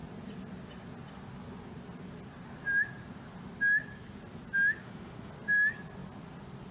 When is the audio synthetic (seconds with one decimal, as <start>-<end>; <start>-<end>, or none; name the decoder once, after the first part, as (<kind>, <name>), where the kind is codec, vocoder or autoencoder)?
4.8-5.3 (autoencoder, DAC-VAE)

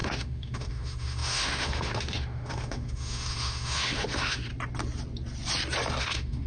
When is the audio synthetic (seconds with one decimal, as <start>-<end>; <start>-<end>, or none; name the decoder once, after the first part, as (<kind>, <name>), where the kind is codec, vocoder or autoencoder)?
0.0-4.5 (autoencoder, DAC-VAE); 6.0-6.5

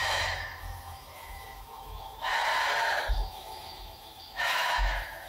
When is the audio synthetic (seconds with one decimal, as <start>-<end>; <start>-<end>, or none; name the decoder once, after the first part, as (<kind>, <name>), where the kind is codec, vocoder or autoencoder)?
0.0-2.5 (autoencoder, DAC-VAE); 3.1-5.3